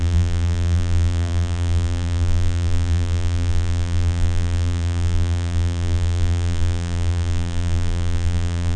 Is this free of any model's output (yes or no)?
no